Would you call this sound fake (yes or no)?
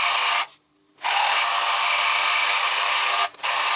no